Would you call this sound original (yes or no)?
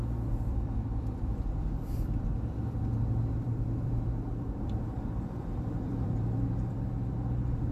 no